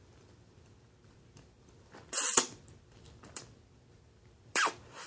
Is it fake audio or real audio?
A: fake